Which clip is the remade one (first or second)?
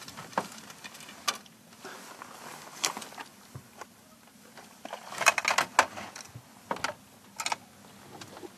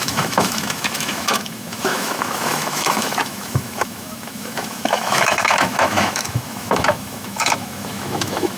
second